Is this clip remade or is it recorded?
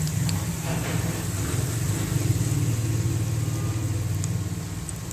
recorded